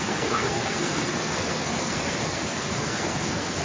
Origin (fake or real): fake